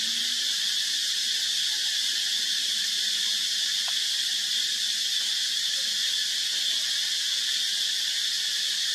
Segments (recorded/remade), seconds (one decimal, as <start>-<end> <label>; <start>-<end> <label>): 0.0-8.9 recorded